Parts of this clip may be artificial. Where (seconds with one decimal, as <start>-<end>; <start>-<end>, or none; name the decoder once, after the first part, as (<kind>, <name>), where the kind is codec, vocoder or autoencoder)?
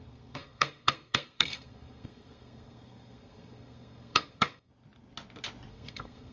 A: 0.0-4.7 (codec, SNAC); 5.7-6.3